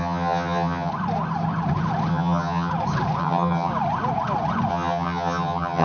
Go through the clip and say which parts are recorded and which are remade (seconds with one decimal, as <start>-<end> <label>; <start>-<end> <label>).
0.0-0.9 remade; 0.9-2.1 recorded; 2.1-2.7 remade; 2.7-3.2 recorded; 3.2-3.7 remade; 3.7-4.7 recorded; 4.7-5.8 remade